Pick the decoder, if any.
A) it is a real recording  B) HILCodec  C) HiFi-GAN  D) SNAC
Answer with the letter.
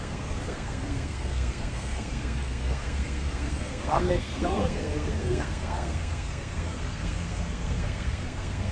D